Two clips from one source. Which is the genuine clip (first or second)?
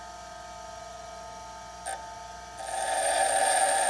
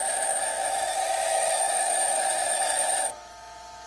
first